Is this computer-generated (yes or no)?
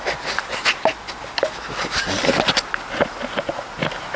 no